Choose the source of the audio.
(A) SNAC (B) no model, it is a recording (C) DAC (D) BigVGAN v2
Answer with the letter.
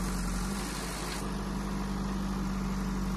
B